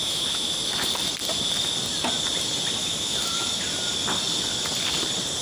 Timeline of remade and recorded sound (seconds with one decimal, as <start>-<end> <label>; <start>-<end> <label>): 0.0-0.6 remade; 0.6-2.8 recorded; 2.8-3.6 remade; 3.6-5.4 recorded